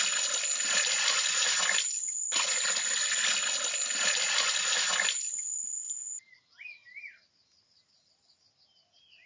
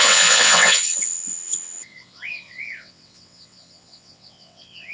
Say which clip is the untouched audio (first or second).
first